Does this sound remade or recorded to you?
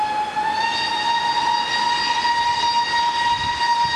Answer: recorded